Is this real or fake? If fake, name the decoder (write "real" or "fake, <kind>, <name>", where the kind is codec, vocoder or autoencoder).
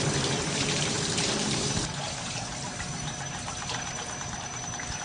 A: fake, vocoder, BigVGAN v2